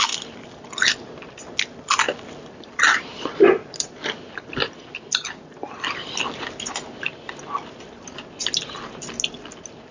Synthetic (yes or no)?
no